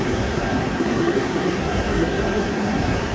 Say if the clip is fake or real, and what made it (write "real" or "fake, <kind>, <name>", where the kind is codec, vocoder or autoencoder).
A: fake, codec, SNAC